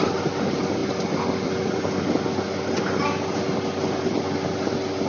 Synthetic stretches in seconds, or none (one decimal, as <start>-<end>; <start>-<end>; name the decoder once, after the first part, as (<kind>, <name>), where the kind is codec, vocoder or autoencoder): none